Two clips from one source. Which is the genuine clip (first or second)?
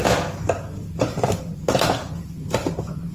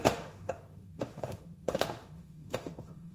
first